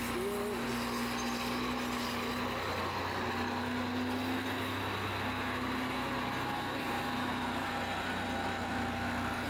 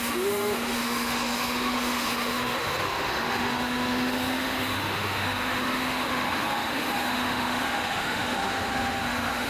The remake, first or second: second